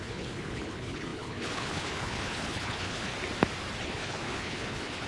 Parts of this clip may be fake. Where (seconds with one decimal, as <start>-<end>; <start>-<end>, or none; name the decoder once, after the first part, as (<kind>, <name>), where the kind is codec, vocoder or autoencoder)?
0.0-3.1 (codec, HILCodec); 3.8-5.1